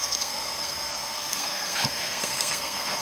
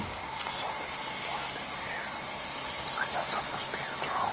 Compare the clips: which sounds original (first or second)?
second